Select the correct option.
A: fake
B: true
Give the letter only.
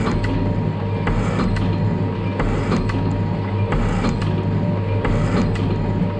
B